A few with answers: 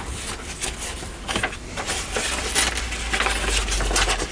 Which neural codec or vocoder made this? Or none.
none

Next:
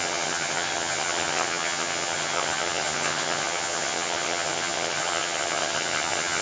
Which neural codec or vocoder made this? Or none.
vocoder, HiFi-GAN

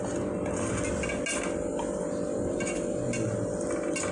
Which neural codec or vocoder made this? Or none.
none